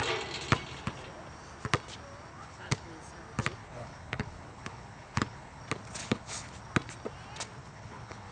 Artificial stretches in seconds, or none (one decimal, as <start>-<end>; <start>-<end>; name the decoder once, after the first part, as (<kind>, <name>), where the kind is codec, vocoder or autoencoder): 2.3-2.9 (codec, HILCodec); 3.6-5.6; 6.0-6.6; 7.6-8.3